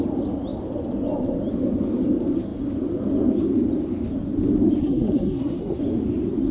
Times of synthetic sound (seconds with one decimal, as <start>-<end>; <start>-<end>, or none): 4.8-5.8